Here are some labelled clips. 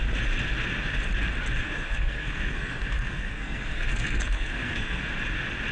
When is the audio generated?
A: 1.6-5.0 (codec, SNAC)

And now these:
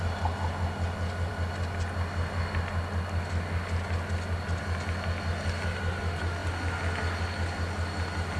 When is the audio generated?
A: none

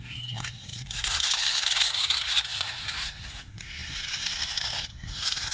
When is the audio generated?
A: 0.0-5.5 (codec, SNAC)